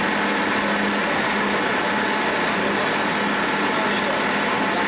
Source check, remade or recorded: recorded